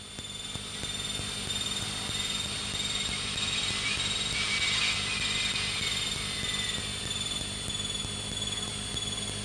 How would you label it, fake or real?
real